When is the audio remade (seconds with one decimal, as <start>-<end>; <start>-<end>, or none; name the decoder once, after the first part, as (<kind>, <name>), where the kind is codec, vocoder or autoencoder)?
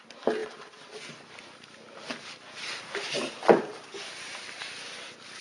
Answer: none